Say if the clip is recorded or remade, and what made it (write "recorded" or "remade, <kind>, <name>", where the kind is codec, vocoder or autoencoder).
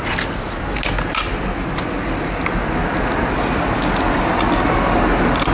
recorded